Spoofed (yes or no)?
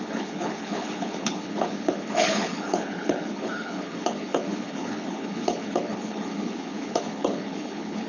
yes